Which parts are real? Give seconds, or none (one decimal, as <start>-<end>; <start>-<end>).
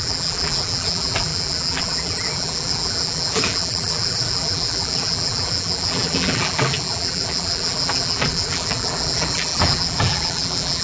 none